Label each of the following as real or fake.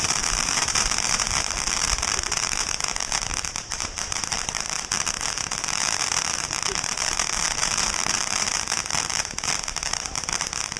fake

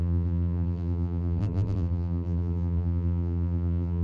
fake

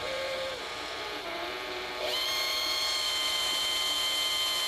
fake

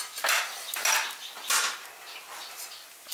real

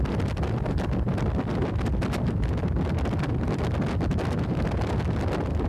real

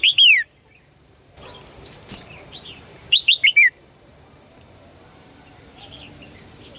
fake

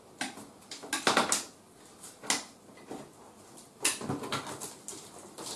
real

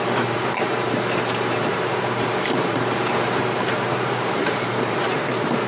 fake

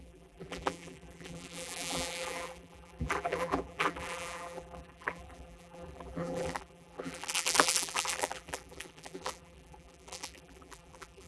fake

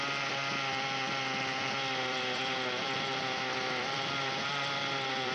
fake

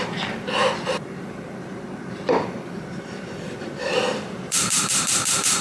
fake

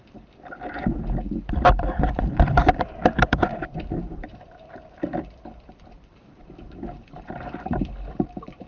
fake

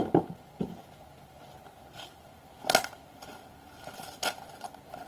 real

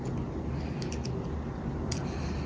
real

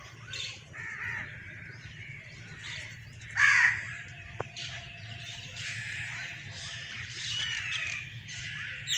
fake